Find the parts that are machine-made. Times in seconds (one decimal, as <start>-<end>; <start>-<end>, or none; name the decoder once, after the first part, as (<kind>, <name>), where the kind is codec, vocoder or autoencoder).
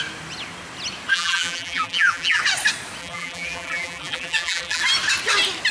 1.1-2.4 (vocoder, BigVGAN v2); 3.0-4.8